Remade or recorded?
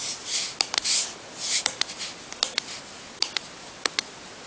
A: recorded